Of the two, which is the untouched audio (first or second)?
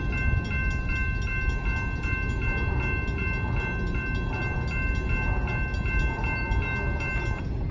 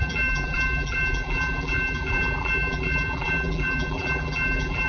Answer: first